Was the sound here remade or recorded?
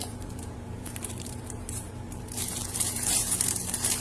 remade